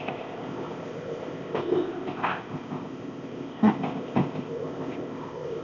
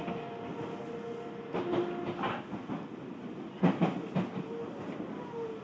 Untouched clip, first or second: second